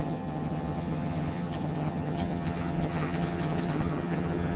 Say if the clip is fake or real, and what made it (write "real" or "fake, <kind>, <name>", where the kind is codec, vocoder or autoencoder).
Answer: fake, vocoder, HiFi-GAN